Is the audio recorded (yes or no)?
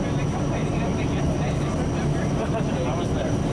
yes